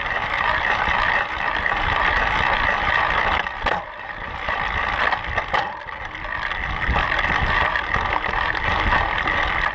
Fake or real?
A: real